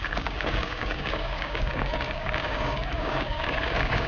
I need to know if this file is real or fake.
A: fake